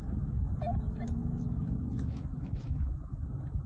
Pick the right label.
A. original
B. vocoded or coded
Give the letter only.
B